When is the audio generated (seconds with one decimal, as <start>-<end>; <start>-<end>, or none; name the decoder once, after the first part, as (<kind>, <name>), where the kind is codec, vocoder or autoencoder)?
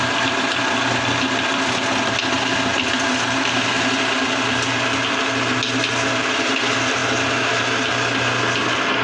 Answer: none